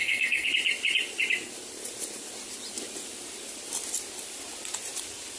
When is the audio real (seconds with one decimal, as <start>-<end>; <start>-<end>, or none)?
0.5-5.4

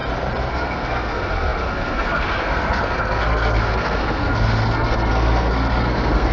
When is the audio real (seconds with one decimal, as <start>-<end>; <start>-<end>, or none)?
0.0-0.5

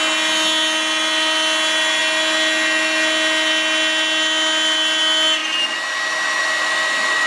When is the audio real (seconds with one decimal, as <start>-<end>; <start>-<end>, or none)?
0.0-7.3

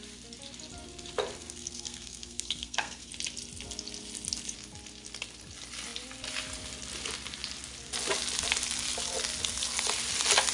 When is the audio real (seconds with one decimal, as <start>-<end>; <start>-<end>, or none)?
0.0-1.4; 3.1-10.5